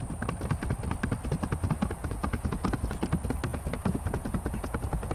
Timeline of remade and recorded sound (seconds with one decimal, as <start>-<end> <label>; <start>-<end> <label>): 0.0-2.0 recorded; 2.0-2.8 remade; 2.8-3.5 recorded; 3.5-5.1 remade